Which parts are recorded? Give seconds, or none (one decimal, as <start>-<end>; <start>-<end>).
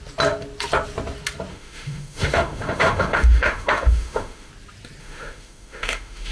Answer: 0.0-1.5; 4.5-5.0